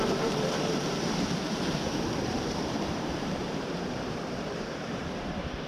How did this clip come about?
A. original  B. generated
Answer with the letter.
B